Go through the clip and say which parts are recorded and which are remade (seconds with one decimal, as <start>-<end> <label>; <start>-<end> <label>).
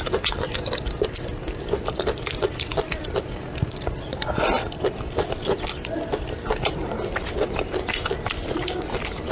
0.0-9.3 recorded